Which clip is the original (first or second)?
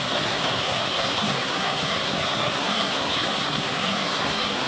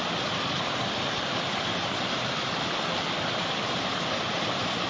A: second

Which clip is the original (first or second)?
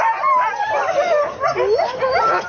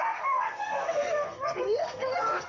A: first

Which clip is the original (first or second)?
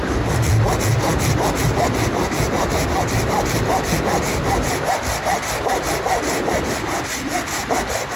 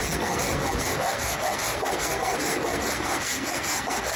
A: first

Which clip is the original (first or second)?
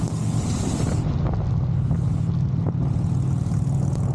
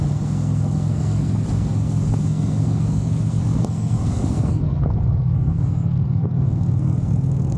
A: first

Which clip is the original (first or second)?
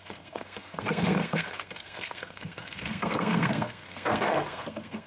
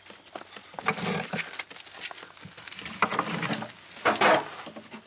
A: second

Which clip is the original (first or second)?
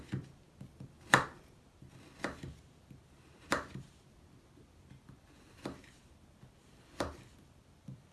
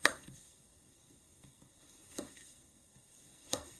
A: first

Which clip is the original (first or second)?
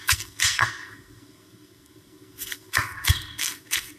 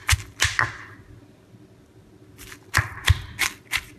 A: second